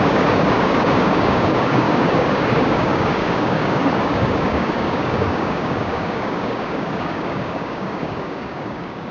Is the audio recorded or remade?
remade